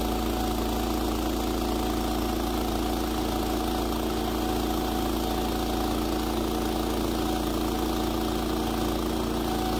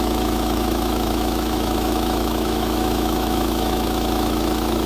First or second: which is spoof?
second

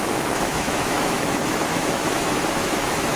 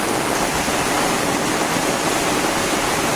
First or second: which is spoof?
first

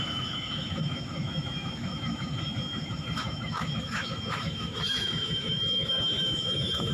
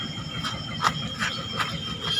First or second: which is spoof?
first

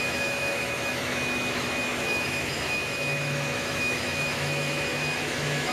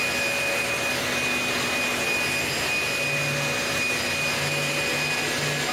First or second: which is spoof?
first